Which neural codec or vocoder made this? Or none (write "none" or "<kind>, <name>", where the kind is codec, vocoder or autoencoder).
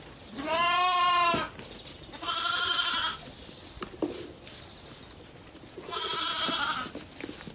none